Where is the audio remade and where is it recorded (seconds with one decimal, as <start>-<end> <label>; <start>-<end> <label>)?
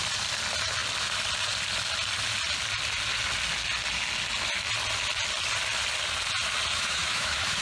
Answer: 0.0-6.7 recorded; 6.7-7.6 remade